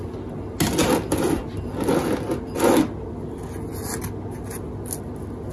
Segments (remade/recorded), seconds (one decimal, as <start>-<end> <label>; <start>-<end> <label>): 0.0-5.5 recorded